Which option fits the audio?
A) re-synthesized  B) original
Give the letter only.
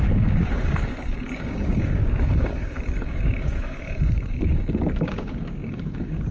A